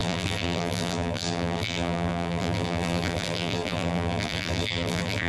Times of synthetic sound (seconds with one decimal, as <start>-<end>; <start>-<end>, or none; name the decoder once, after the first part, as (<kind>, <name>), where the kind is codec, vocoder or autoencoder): 0.0-5.3 (vocoder, BigVGAN v2)